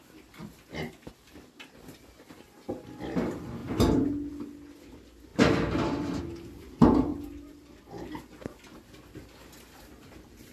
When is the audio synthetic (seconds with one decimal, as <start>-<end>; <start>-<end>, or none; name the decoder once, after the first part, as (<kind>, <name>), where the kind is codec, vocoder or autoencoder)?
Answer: 5.3-6.2 (vocoder, BigVGAN v2); 7.1-8.1